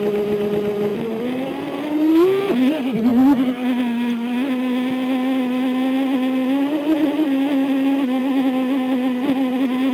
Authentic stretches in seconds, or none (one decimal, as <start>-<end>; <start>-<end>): 0.0-9.9

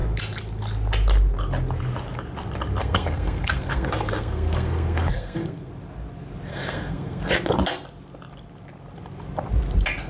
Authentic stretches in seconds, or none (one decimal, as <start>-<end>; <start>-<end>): 0.0-2.8; 5.7-6.5; 7.2-10.1